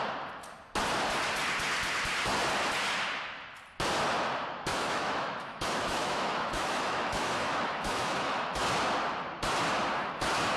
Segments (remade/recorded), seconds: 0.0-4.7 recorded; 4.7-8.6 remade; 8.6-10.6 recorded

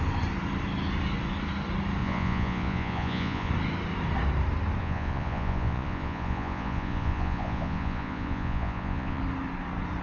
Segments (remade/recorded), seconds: 0.0-2.0 recorded; 2.0-3.5 remade; 3.5-4.8 recorded; 4.8-9.2 remade; 9.2-10.0 recorded

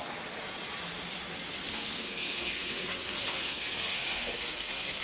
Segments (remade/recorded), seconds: 0.0-1.7 recorded; 1.7-5.0 remade